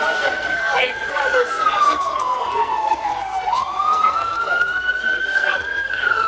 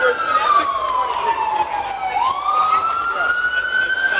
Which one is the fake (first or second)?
first